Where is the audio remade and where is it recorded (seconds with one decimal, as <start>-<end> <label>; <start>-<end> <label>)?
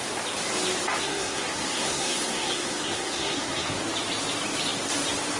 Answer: 0.0-1.0 recorded; 1.0-3.8 remade; 3.8-5.4 recorded